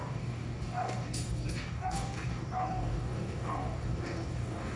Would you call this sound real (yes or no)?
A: no